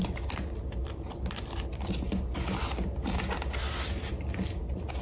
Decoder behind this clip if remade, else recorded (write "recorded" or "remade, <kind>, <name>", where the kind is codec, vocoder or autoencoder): recorded